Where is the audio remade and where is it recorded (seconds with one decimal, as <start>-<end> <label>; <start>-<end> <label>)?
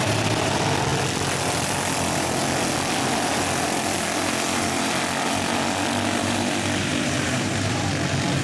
0.0-6.8 recorded; 6.8-7.9 remade; 7.9-8.4 recorded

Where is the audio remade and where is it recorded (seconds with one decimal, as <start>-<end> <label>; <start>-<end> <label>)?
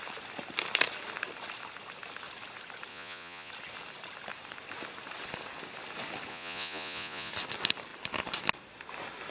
0.0-2.9 recorded; 2.9-3.5 remade; 3.5-6.3 recorded; 6.3-7.3 remade; 7.3-9.3 recorded